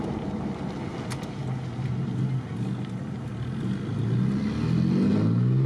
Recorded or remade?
recorded